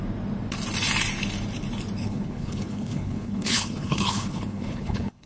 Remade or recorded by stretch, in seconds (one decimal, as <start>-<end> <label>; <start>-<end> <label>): 0.0-2.0 recorded; 2.0-5.3 remade